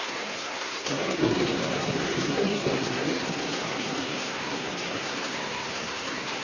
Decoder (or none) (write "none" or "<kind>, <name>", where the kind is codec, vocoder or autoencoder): codec, SNAC